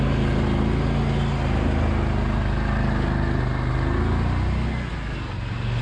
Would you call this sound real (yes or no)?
yes